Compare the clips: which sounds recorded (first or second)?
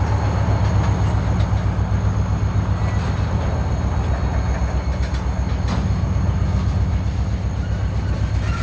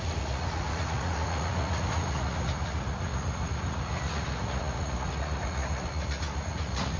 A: first